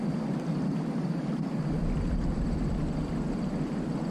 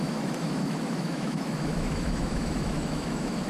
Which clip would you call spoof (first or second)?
second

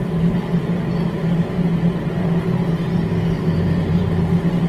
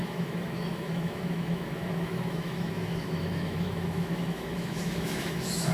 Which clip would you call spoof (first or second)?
second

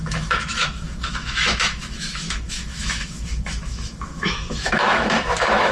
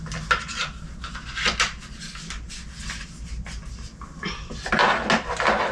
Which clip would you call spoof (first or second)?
first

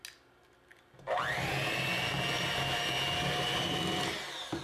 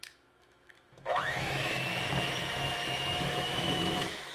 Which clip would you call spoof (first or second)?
second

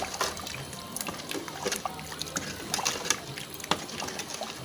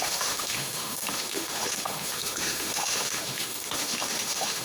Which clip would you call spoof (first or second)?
second